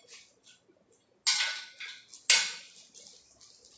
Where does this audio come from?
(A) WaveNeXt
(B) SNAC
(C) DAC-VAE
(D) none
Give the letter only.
D